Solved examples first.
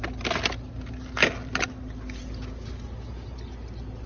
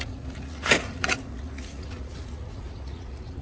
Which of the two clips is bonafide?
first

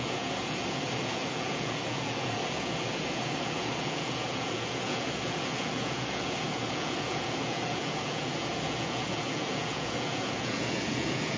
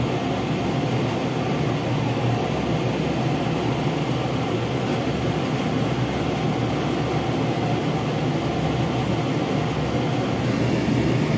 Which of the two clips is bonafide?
second